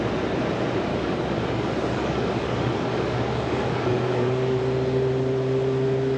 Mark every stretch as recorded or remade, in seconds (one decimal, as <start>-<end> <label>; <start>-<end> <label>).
0.0-0.9 recorded; 0.9-4.6 remade; 4.6-6.2 recorded